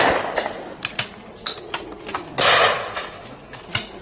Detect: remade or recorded recorded